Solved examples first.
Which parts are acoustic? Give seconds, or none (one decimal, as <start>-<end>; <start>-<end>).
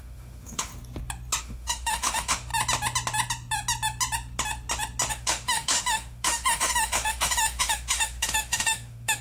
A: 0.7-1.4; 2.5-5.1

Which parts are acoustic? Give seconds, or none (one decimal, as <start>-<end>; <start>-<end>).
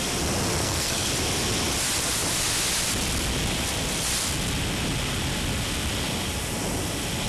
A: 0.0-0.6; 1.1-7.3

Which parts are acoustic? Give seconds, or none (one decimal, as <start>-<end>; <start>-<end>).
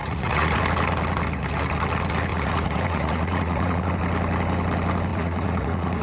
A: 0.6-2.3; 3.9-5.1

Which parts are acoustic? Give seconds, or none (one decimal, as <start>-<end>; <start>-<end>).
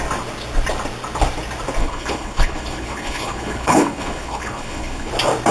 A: 0.0-1.8; 5.1-5.5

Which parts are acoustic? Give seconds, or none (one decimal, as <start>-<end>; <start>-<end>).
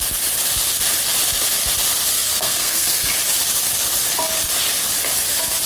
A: 0.0-2.1; 3.1-5.7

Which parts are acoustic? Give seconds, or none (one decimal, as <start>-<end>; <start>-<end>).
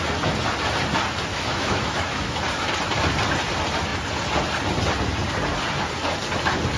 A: 0.0-1.3; 2.4-6.8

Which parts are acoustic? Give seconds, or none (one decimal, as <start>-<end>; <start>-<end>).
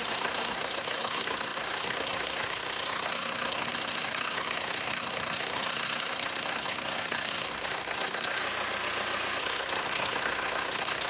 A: 8.4-9.4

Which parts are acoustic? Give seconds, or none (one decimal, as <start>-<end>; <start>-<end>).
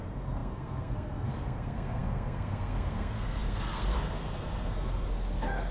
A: none